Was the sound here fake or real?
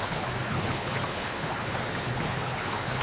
fake